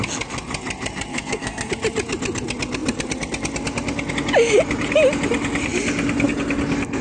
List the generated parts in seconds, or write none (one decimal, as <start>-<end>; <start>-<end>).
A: 1.1-1.7